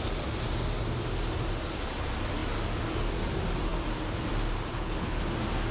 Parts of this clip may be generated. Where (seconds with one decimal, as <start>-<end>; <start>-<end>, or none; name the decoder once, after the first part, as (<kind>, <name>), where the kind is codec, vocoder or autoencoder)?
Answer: 4.7-5.2 (codec, HILCodec)